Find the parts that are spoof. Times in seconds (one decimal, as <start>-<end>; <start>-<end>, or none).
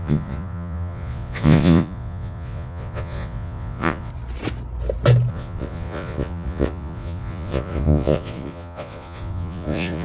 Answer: 0.0-4.1; 5.3-10.0